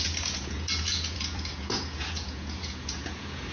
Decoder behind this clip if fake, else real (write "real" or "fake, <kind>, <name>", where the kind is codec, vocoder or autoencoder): fake, vocoder, Vocos